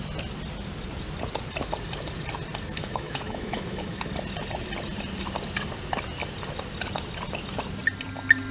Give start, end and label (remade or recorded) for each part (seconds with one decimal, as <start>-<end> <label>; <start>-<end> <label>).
0.0-2.8 recorded; 2.8-4.1 remade; 4.1-8.5 recorded